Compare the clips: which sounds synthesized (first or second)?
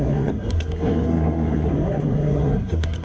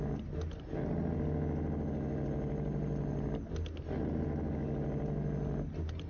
first